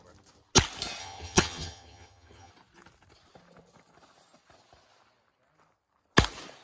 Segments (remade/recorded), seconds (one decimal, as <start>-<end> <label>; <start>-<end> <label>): 0.0-1.0 recorded; 1.0-2.5 remade; 2.5-6.6 recorded